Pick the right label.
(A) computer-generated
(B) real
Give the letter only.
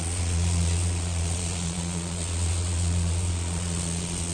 A